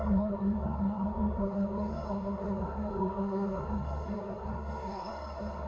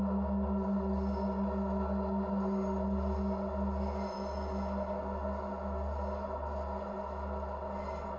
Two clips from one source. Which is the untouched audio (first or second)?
second